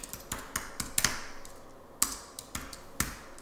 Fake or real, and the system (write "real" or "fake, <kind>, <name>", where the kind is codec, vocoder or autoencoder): real